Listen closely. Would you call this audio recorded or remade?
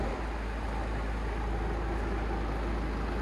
recorded